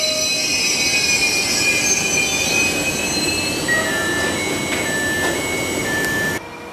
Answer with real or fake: real